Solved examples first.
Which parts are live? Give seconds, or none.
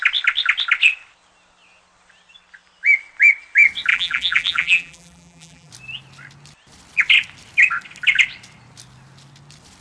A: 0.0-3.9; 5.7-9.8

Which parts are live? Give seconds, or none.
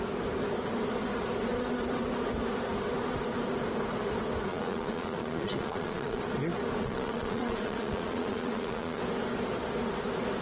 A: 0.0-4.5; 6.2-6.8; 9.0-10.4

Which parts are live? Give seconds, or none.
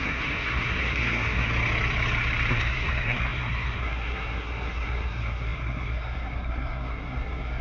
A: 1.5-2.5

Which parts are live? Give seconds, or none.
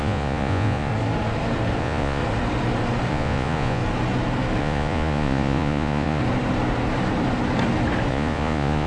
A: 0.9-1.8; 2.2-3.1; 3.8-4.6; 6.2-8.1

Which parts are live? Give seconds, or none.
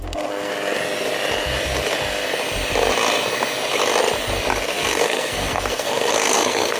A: 0.5-4.6